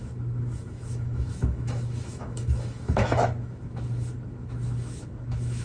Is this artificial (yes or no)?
yes